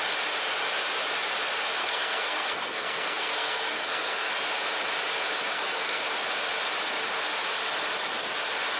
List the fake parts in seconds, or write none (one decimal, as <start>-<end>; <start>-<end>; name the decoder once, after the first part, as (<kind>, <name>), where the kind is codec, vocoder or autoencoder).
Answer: 1.8-4.3 (codec, SNAC); 5.5-6.0